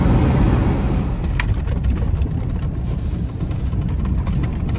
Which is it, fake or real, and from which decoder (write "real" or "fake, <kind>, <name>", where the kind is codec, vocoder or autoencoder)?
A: fake, vocoder, BigVGAN v2